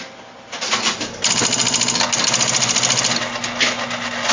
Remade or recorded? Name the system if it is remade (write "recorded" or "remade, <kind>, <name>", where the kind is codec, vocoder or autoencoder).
recorded